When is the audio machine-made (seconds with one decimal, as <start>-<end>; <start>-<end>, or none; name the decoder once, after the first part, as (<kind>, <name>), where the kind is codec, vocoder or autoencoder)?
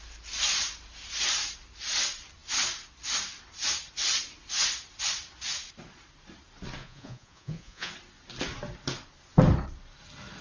6.8-7.9 (vocoder, Vocos)